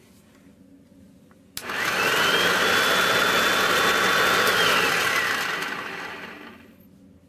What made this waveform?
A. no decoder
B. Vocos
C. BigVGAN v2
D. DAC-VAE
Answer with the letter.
A